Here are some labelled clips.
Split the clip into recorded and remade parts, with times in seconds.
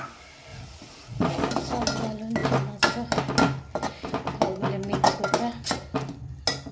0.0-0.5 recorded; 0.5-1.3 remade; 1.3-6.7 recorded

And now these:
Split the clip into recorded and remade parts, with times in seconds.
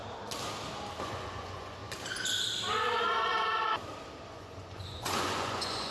0.0-1.0 recorded; 1.0-1.8 remade; 1.8-4.3 recorded; 4.3-5.9 remade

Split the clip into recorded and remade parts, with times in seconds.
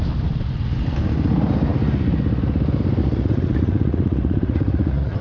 0.0-3.0 recorded; 3.0-5.2 remade